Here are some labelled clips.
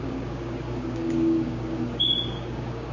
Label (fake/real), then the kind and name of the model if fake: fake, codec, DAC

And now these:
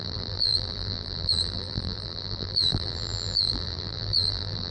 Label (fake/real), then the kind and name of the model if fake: fake, vocoder, BigVGAN v2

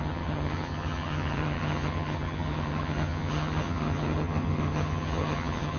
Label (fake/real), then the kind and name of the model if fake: fake, vocoder, HiFi-GAN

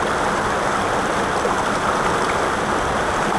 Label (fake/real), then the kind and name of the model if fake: real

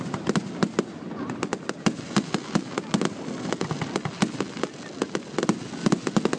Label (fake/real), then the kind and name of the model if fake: real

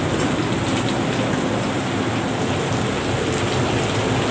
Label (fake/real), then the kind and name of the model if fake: real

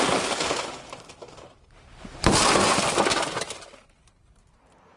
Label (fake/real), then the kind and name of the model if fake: fake, vocoder, BigVGAN v2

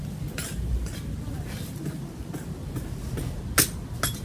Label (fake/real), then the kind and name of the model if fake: real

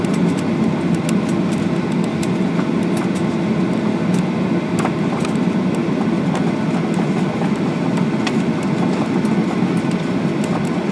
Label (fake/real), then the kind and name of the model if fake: real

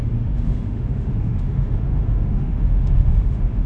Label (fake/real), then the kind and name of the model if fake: fake, autoencoder, DAC-VAE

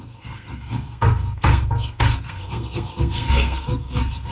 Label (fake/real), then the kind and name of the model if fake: fake, codec, SNAC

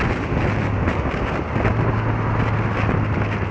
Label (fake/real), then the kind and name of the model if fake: real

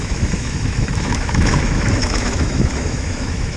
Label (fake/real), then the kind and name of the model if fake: fake, autoencoder, DAC-VAE